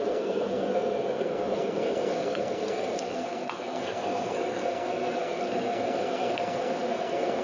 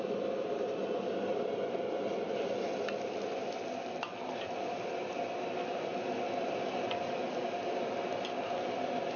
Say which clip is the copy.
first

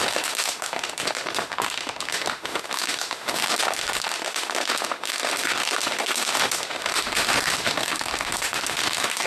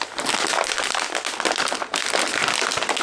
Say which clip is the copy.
first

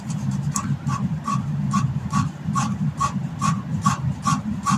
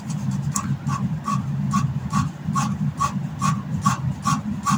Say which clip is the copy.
first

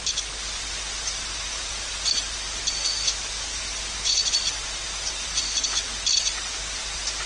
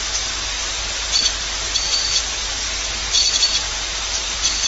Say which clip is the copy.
second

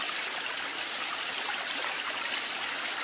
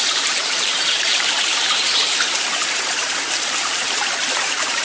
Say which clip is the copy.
second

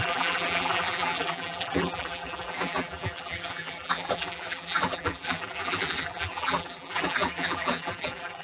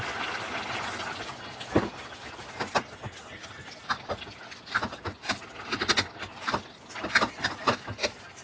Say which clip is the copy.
first